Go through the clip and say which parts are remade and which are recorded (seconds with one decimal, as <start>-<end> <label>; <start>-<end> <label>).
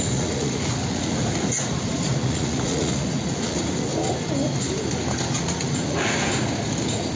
0.0-3.9 remade; 3.9-5.4 recorded; 5.4-7.2 remade